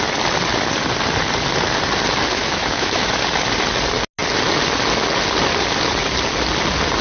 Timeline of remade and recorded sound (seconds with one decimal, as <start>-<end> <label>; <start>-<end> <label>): 0.0-2.4 recorded; 2.4-3.1 remade; 3.1-7.0 recorded